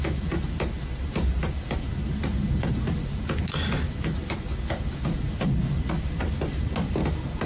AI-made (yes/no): no